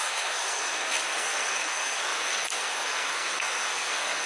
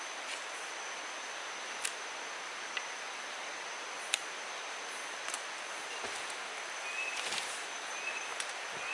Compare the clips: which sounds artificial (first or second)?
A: first